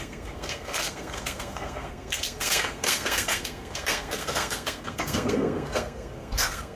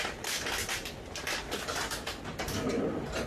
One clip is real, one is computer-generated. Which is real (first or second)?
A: second